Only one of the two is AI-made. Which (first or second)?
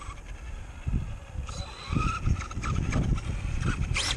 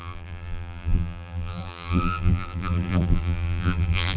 second